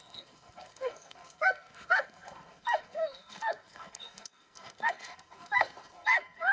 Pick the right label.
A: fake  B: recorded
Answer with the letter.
A